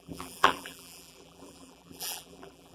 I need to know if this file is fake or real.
fake